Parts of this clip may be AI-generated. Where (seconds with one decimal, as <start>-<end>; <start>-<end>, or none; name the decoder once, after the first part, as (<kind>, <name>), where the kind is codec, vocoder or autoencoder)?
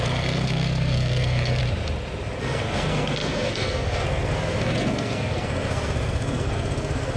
0.0-1.6 (codec, SNAC); 2.4-7.2